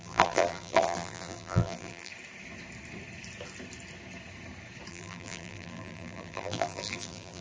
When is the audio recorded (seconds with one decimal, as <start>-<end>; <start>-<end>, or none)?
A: 2.1-4.9